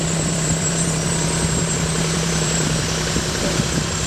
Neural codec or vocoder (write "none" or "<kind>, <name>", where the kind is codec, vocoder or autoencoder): vocoder, BigVGAN v2